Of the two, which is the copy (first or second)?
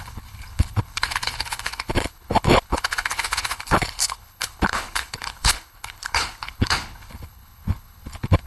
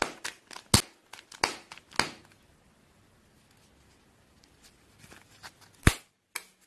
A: first